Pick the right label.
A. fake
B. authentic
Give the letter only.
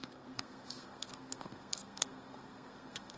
A